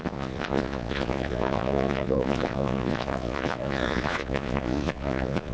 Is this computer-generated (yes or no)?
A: yes